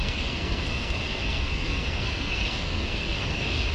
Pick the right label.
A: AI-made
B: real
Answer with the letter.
A